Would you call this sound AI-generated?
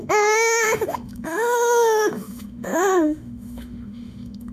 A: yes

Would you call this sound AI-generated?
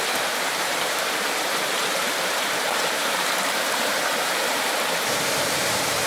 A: yes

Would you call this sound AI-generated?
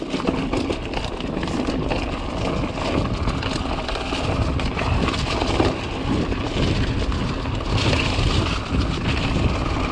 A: no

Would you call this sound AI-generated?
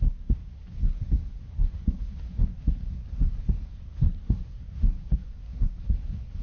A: yes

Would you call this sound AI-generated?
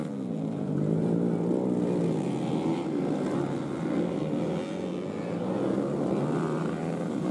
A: no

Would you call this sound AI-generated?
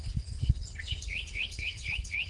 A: yes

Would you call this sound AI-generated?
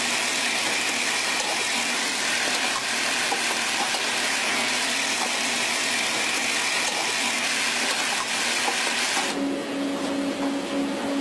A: no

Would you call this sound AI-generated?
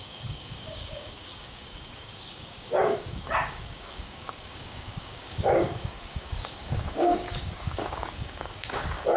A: yes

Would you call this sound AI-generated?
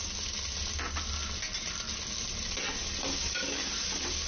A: no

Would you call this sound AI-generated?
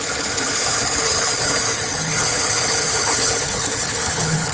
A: yes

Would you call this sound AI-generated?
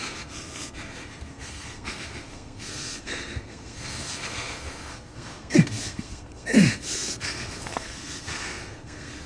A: yes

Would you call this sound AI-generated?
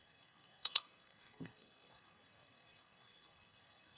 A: yes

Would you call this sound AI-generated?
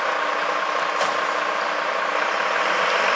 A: no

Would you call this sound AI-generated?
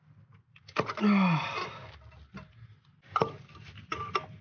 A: no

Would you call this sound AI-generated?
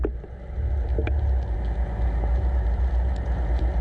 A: no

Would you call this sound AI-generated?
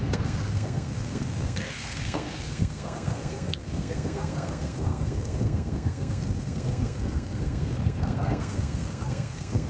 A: yes